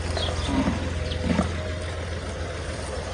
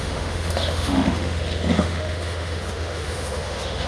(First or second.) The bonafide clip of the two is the first